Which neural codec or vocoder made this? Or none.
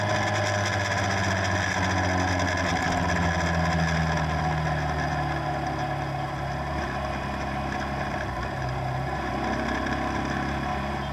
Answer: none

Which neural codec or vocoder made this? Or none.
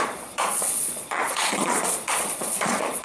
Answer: vocoder, Vocos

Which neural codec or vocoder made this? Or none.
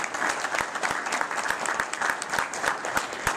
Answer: none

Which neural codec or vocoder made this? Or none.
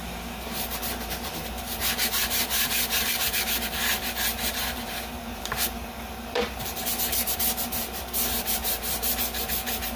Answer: vocoder, BigVGAN v2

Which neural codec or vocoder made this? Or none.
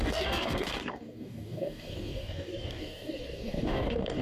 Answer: codec, DAC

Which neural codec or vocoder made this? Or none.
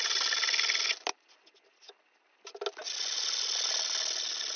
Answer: none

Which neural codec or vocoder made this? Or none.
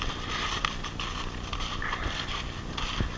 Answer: none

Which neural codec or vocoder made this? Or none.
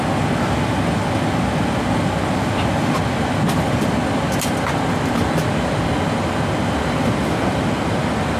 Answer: none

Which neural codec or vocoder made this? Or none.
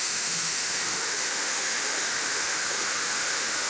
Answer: autoencoder, DAC-VAE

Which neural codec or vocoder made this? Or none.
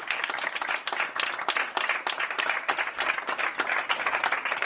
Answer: none